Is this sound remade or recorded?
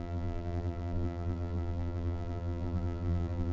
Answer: remade